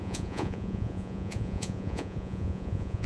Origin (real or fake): fake